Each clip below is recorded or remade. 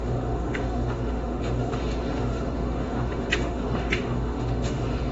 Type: remade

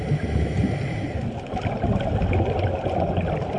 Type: recorded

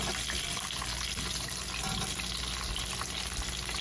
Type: recorded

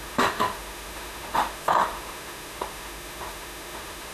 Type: remade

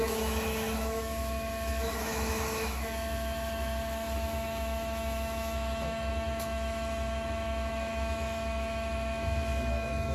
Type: remade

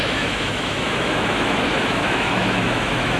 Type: remade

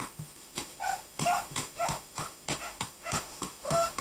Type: remade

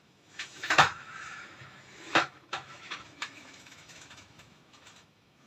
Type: remade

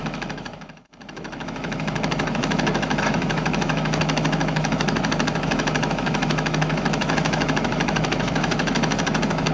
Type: remade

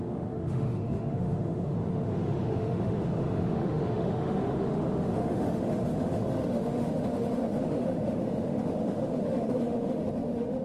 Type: remade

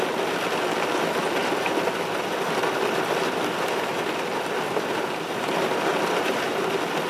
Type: recorded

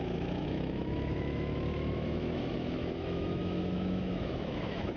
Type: remade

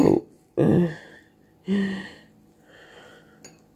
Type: recorded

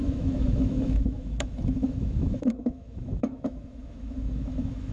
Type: remade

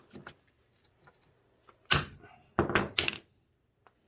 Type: recorded